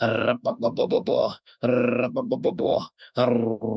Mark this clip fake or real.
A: fake